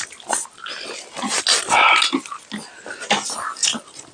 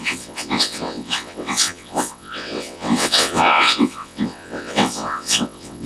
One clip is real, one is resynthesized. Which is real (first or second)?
first